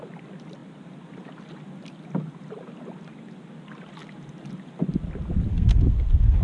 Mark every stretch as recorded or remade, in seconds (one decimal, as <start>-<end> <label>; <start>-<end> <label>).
0.0-5.5 recorded; 5.5-6.4 remade